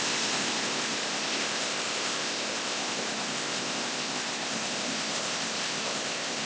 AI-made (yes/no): yes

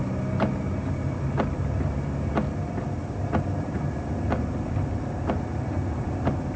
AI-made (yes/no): no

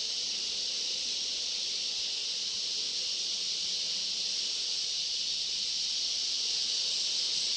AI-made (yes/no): no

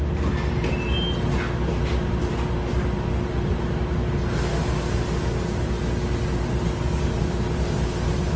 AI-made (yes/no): no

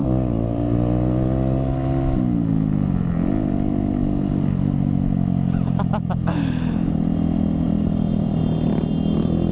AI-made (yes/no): no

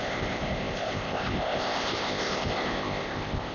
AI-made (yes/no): yes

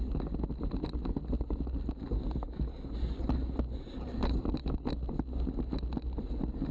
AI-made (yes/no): no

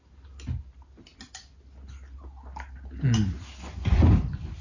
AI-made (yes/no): no